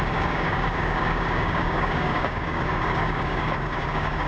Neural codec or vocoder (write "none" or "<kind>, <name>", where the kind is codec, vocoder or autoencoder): codec, DAC